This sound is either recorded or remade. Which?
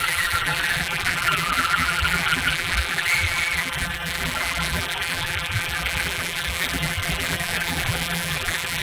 remade